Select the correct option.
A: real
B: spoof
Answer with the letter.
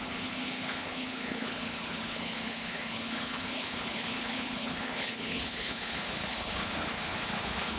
B